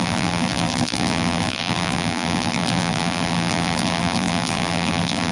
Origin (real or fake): fake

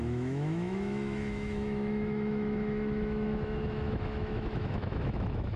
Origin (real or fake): fake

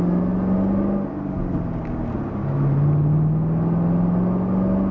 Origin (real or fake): real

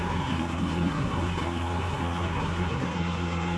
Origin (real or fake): fake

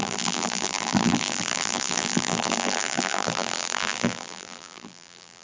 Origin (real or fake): fake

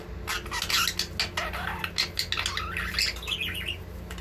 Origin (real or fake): real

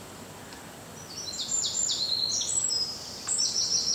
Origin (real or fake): fake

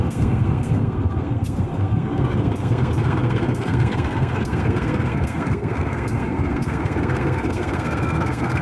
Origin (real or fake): fake